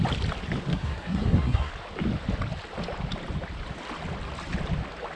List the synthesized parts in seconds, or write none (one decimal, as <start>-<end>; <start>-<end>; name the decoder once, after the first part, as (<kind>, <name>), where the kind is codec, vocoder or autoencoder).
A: 0.7-1.7 (codec, SNAC)